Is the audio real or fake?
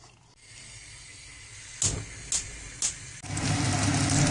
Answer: real